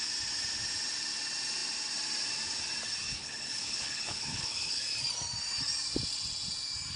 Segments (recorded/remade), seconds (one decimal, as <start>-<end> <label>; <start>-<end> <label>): 0.0-3.2 recorded; 3.2-4.8 remade; 4.8-7.0 recorded